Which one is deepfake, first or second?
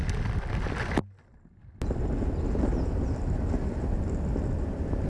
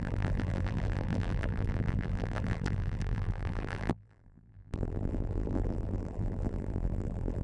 second